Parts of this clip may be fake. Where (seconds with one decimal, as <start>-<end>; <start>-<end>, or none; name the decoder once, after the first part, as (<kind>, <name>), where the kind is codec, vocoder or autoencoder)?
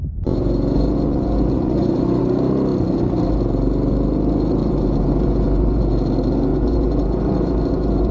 0.0-2.2 (vocoder, Vocos); 4.6-5.8; 6.5-8.1